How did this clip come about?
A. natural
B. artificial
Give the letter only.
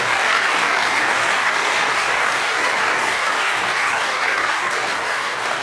B